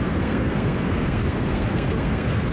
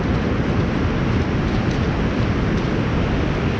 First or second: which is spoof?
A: first